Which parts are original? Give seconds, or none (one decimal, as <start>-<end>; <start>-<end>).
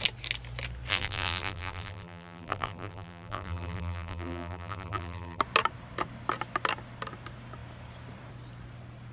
0.0-0.9; 5.4-9.1